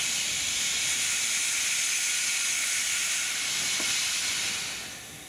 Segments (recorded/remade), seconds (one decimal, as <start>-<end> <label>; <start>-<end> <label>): 0.0-5.3 recorded